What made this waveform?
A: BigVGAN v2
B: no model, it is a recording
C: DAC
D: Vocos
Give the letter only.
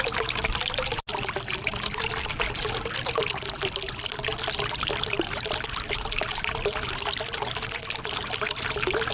B